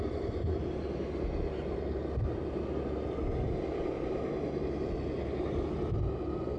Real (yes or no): yes